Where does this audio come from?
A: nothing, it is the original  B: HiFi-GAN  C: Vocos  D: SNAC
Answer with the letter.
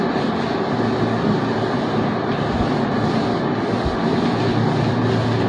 A